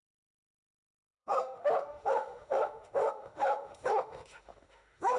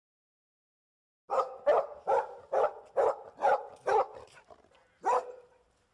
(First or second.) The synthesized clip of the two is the first